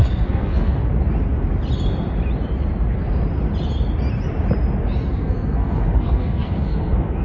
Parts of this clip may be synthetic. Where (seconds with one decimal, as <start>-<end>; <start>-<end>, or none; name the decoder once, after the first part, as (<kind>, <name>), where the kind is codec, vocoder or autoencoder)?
0.0-0.8 (codec, SNAC); 5.1-7.2